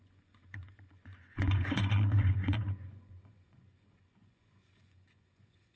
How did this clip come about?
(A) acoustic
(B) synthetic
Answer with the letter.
B